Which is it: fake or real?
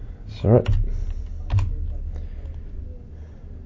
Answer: real